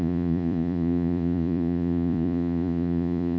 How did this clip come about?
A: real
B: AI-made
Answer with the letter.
B